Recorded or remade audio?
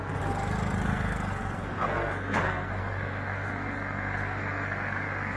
remade